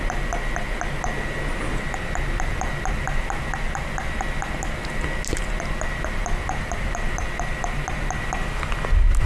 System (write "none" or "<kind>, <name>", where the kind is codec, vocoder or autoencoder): none